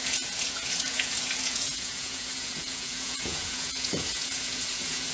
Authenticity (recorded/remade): remade